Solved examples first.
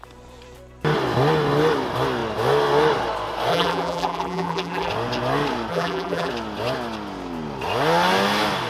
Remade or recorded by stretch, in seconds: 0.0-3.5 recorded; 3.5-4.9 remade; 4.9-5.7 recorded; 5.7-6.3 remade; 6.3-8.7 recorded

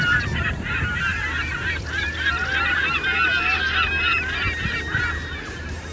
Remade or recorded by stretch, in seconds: 0.0-5.9 recorded

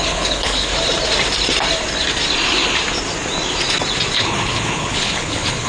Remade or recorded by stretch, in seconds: 0.0-0.7 remade; 0.7-4.1 recorded; 4.1-5.7 remade

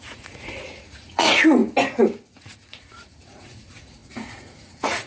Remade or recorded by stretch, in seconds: 0.0-1.6 remade; 1.6-2.4 recorded; 2.4-5.1 remade

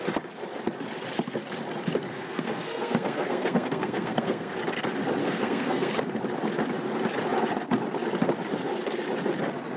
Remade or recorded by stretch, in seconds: 0.0-2.1 recorded; 2.1-4.6 remade; 4.6-5.2 recorded; 5.2-5.9 remade; 5.9-9.8 recorded

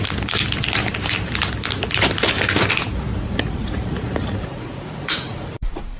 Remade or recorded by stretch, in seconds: 0.0-3.2 recorded; 3.2-6.0 remade

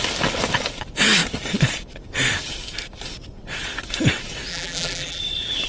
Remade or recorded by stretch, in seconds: 0.0-4.5 recorded; 4.5-5.2 remade; 5.2-5.7 recorded

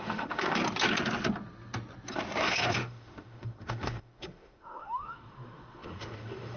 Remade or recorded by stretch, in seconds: 0.0-0.6 remade; 0.6-2.4 recorded; 2.4-6.6 remade